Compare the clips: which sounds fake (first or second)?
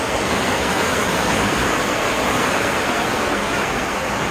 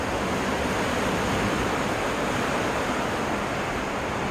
first